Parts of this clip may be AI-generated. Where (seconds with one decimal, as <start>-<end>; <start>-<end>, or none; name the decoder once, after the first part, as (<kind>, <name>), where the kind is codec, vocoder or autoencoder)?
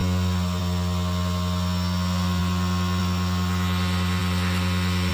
none